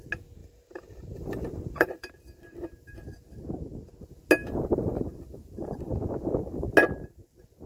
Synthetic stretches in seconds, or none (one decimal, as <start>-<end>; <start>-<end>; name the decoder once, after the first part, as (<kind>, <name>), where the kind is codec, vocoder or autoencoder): 0.4-2.1 (vocoder, BigVGAN v2); 4.4-5.0